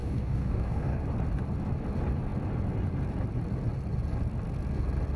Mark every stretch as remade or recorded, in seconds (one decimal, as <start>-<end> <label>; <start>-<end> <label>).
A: 0.0-1.0 remade; 1.0-5.2 recorded